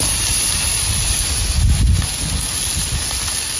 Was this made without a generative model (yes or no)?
yes